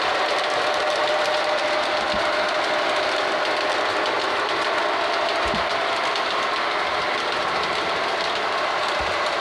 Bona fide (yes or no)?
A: yes